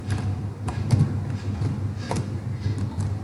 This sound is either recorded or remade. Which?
recorded